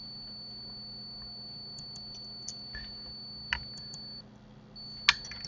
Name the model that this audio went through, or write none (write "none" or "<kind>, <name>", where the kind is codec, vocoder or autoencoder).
none